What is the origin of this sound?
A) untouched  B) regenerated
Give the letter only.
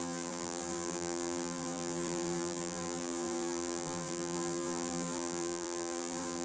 B